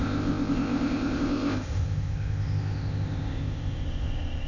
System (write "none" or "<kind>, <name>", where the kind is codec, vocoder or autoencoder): codec, ZipCodec